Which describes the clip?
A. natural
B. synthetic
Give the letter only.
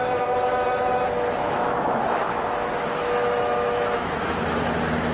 B